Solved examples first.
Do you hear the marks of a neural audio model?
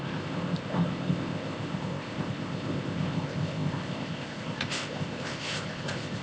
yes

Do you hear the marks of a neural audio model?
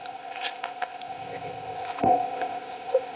yes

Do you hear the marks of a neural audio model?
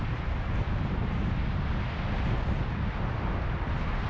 no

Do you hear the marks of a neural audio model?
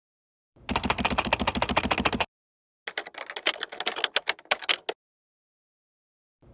no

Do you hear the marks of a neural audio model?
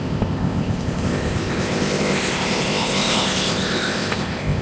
yes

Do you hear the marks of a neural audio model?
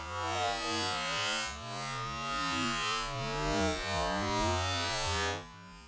no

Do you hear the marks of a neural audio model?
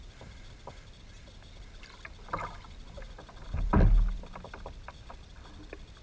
no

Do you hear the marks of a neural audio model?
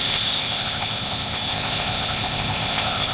yes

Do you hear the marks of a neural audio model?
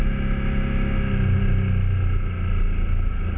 no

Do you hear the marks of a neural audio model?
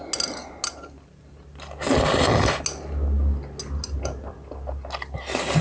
no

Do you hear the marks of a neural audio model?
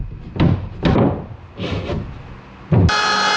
no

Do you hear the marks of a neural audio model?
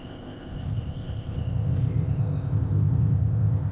yes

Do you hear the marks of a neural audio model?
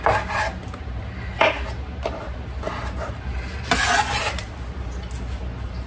no